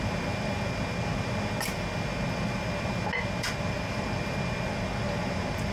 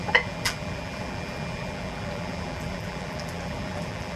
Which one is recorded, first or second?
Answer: first